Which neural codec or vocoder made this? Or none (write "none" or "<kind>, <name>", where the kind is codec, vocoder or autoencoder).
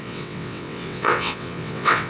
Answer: vocoder, WaveNeXt